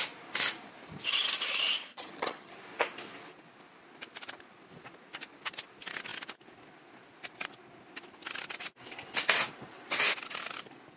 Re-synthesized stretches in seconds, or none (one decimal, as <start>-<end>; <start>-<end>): 1.9-2.5